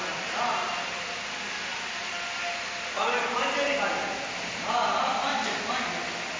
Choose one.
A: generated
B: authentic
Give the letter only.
B